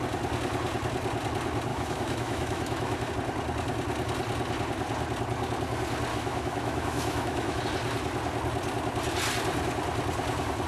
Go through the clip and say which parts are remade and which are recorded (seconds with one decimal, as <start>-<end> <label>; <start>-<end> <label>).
0.0-1.7 recorded; 1.7-3.1 remade; 3.1-6.1 recorded; 6.1-7.6 remade; 7.6-10.7 recorded